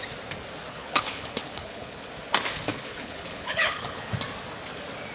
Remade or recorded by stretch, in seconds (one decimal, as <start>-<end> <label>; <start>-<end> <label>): 0.0-0.7 recorded; 0.7-2.1 remade; 2.1-2.7 recorded; 2.7-4.1 remade; 4.1-5.1 recorded